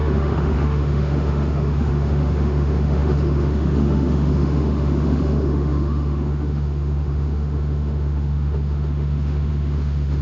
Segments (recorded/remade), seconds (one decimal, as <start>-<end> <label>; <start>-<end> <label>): 0.0-10.2 remade